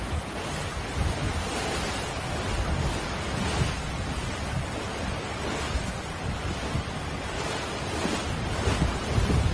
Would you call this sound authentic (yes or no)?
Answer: yes